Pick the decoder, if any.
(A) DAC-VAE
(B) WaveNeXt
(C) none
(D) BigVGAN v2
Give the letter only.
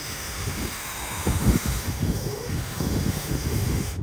A